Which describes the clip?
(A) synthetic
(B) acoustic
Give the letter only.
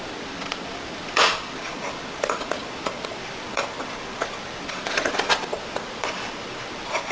A